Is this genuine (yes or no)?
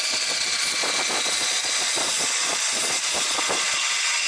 no